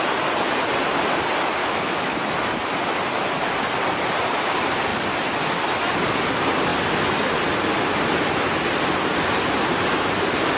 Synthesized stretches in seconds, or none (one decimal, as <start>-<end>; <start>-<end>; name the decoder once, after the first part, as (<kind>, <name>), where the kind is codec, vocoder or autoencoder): 1.6-2.2 (autoencoder, DAC-VAE)